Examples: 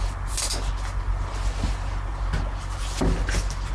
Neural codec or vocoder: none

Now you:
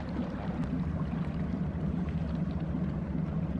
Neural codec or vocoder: none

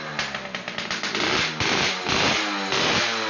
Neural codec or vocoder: none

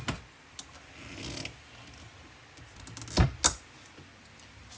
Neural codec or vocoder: none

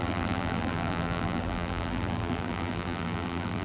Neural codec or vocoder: vocoder, BigVGAN v2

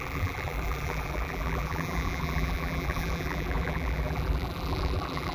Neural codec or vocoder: vocoder, BigVGAN v2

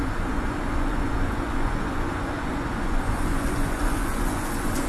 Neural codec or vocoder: vocoder, Vocos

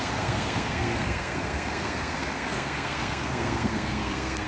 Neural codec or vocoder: codec, SNAC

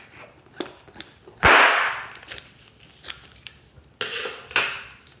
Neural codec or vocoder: none